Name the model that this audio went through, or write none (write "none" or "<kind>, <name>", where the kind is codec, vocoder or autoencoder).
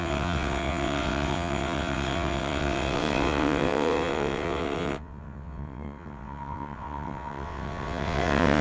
vocoder, WaveNeXt